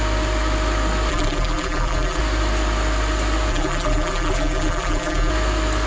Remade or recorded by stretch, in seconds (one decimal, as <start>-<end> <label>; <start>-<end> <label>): 0.0-1.1 recorded; 1.1-2.2 remade; 2.2-3.5 recorded; 3.5-5.3 remade; 5.3-5.9 recorded